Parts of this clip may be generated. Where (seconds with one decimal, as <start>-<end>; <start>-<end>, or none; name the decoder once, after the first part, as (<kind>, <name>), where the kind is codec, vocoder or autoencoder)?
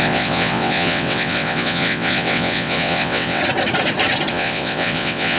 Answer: 0.0-3.4 (vocoder, WaveNeXt); 4.3-5.4